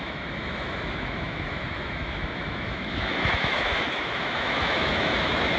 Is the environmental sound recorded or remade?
remade